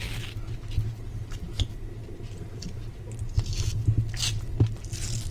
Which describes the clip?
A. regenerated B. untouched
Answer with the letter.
B